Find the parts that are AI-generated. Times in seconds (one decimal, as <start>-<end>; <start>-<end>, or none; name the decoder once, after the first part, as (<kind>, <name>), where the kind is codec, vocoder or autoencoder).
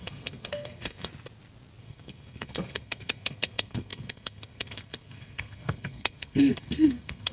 0.0-1.1 (codec, SNAC); 1.8-7.3